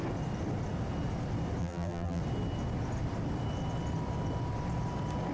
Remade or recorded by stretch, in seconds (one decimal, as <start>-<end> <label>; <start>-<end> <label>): 0.0-1.6 recorded; 1.6-2.2 remade; 2.2-5.3 recorded

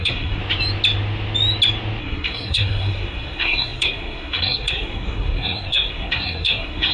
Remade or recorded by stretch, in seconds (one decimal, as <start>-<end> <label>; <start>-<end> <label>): 0.0-0.4 remade; 0.4-2.0 recorded; 2.0-6.9 remade